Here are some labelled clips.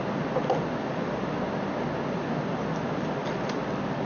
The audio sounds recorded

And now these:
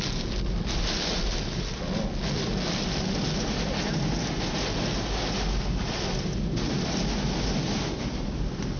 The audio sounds recorded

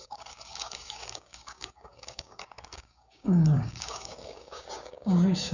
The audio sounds remade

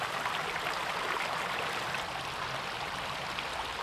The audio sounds recorded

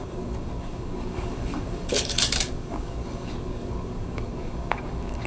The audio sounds remade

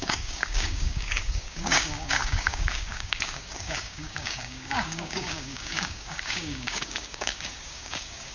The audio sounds remade